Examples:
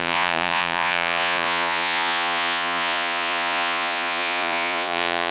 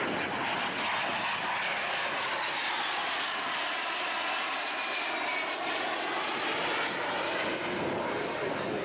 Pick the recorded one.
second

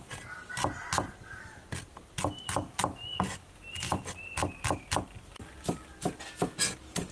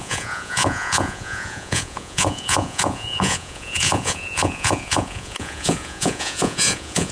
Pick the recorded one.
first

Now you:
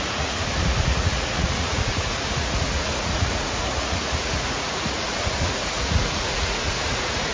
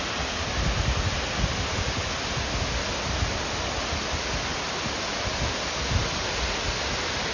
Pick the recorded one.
second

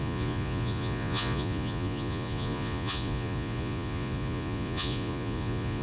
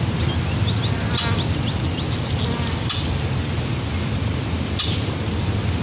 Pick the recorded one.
second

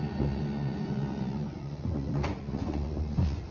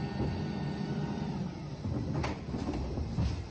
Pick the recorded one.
second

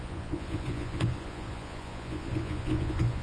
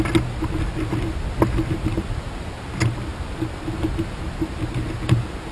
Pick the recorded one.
second